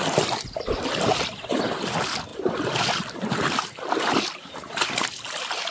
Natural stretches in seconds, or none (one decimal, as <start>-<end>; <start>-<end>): 0.0-5.7